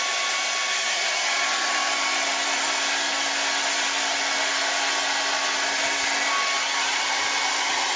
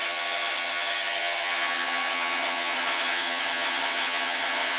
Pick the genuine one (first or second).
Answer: first